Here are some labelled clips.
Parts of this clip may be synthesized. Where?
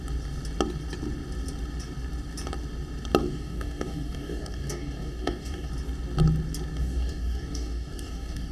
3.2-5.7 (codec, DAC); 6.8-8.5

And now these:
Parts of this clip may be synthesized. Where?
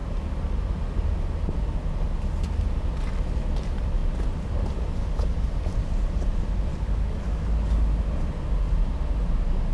6.7-7.9 (codec, DAC)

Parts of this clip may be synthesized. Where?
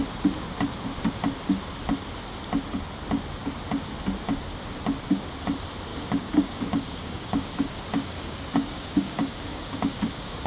5.9-10.5 (codec, DAC)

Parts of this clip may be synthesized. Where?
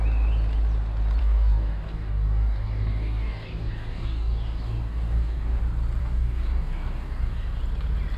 1.2-5.6 (codec, DAC); 6.0-7.6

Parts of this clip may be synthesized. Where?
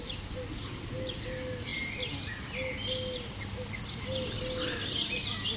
none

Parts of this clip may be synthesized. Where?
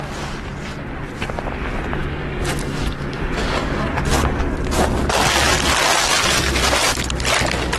2.0-4.0 (codec, DAC)